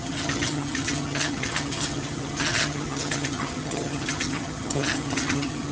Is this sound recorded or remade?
remade